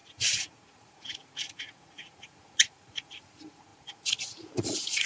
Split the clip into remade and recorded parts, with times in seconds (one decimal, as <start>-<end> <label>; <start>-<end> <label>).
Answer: 0.0-5.1 remade